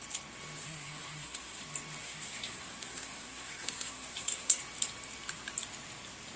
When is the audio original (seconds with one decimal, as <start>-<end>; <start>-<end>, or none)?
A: 0.0-0.6; 1.6-2.0; 4.6-6.4